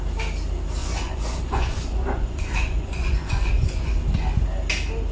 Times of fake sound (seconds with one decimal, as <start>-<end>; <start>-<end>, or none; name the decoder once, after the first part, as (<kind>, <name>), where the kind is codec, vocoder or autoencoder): 0.8-3.9 (vocoder, Vocos)